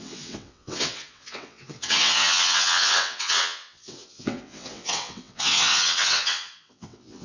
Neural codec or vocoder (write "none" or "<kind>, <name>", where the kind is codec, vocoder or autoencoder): vocoder, WaveNeXt